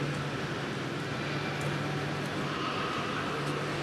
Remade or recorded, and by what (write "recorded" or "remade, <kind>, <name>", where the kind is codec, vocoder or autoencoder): recorded